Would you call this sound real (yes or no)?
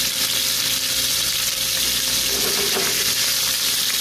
yes